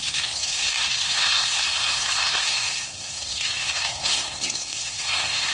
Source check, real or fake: fake